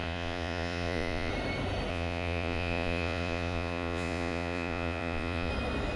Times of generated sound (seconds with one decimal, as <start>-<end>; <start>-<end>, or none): 0.0-1.3; 1.9-5.5